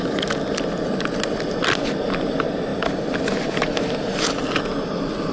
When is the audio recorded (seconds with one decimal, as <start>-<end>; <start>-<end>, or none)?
0.0-5.3